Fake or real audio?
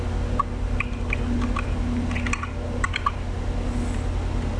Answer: real